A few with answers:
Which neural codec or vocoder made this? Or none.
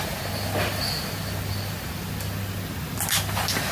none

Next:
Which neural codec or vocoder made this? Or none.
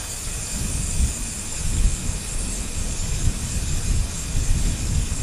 codec, DAC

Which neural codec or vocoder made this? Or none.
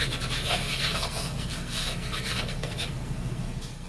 codec, SNAC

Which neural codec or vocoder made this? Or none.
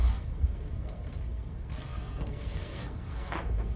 codec, SNAC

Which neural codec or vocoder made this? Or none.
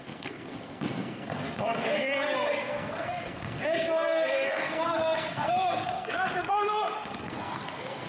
codec, SNAC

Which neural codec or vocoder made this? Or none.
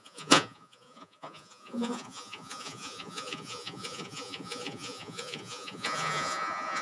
vocoder, Vocos